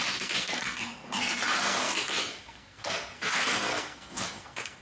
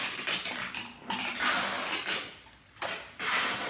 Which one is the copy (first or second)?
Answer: first